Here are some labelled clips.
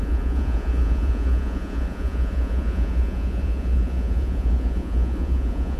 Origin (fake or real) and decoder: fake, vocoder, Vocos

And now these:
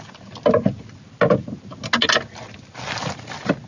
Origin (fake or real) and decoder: real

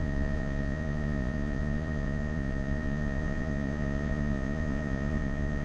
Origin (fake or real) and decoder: fake, vocoder, Vocos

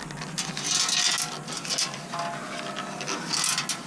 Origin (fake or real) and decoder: real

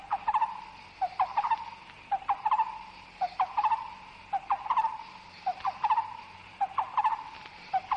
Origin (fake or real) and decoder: real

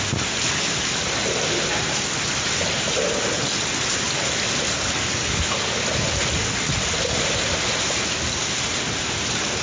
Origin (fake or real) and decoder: real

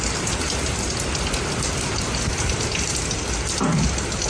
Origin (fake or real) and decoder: real